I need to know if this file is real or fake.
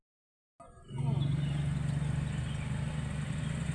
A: real